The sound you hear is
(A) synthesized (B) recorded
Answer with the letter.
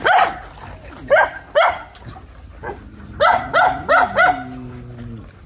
B